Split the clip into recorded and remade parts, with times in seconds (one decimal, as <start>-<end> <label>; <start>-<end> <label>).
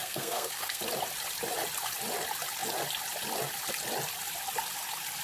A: 0.0-0.8 remade; 0.8-5.2 recorded